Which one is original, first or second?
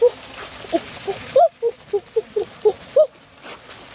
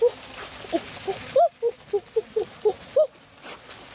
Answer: second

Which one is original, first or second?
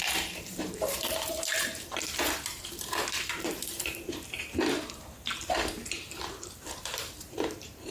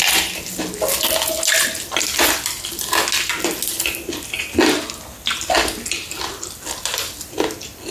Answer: second